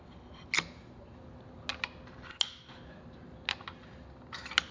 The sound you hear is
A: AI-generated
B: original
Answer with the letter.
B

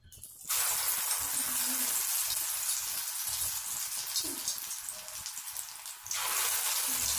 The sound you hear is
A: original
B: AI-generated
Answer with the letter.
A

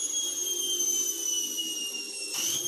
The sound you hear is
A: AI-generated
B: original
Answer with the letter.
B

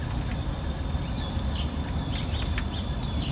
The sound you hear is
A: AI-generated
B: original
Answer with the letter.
B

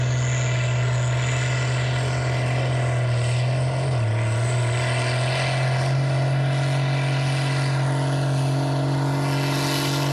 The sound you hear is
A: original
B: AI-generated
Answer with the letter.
A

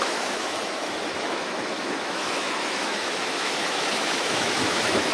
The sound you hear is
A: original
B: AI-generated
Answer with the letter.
B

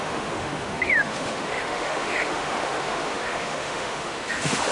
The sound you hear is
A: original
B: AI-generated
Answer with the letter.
B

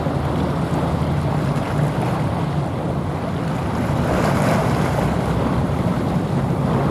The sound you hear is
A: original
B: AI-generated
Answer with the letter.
A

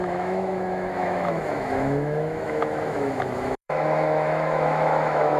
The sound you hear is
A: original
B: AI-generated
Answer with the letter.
B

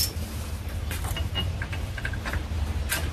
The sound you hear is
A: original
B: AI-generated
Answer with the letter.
A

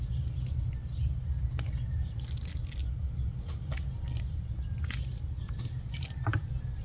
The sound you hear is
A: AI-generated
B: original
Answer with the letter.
B